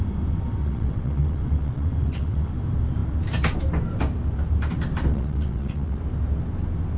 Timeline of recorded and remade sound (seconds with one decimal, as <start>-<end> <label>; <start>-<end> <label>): 0.0-0.6 recorded; 0.6-2.5 remade; 2.5-5.1 recorded; 5.1-6.0 remade; 6.0-7.0 recorded